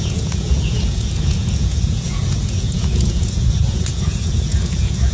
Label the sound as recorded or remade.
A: remade